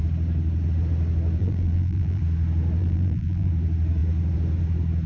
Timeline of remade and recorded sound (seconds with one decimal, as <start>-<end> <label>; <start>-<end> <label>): 0.0-1.4 recorded; 1.4-2.2 remade; 2.2-2.8 recorded; 2.8-3.5 remade; 3.5-5.1 recorded